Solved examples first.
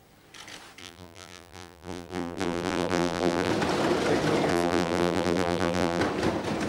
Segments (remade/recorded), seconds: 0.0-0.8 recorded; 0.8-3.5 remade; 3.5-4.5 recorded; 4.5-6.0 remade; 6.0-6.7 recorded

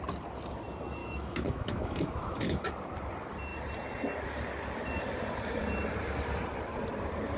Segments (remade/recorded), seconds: 0.0-1.0 recorded; 1.0-2.7 remade; 2.7-7.4 recorded

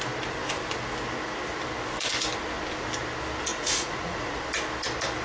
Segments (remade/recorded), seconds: 0.0-3.5 recorded; 3.5-4.4 remade; 4.4-5.2 recorded

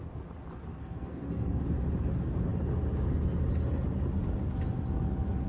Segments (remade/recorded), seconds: 0.0-0.7 recorded; 0.7-1.6 remade; 1.6-5.5 recorded